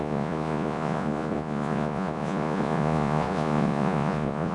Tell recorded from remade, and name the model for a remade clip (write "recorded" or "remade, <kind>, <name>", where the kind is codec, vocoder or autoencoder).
remade, vocoder, Vocos